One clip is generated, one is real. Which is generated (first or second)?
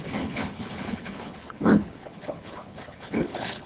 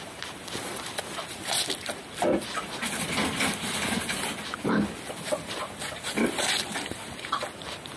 first